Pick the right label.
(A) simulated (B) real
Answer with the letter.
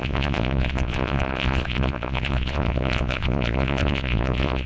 A